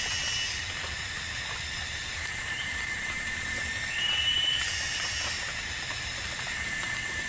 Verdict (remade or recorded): remade